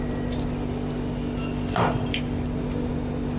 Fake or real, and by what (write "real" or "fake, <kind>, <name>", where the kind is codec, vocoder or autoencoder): real